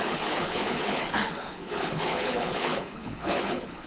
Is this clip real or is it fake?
fake